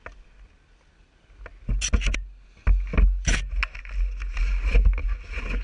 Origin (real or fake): real